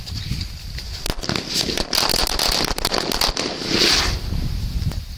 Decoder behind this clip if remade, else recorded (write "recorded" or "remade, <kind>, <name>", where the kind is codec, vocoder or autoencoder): recorded